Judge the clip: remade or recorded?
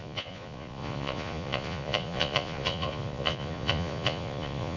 remade